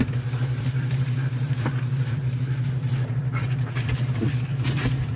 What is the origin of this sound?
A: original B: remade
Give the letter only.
B